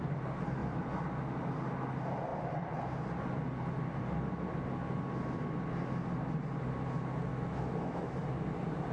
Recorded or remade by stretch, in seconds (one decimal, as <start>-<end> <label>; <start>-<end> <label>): 0.0-7.3 recorded; 7.3-8.2 remade; 8.2-8.9 recorded

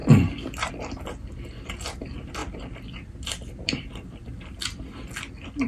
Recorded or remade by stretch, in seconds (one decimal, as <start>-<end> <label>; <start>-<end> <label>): 0.0-0.7 remade; 0.7-2.4 recorded; 2.4-4.3 remade; 4.3-5.7 recorded

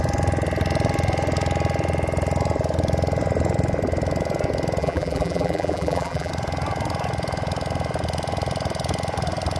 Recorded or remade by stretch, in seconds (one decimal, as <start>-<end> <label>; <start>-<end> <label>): 0.0-4.8 recorded; 4.8-6.3 remade; 6.3-9.6 recorded

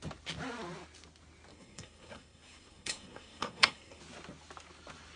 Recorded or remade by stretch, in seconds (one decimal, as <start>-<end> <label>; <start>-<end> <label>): 0.0-1.5 recorded; 1.5-4.0 remade; 4.0-5.2 recorded